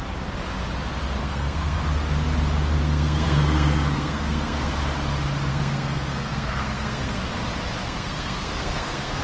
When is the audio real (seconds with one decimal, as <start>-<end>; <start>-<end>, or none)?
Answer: 0.0-1.2; 1.8-2.8; 4.7-5.5; 7.2-7.8